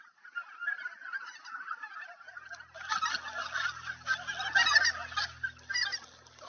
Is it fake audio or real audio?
real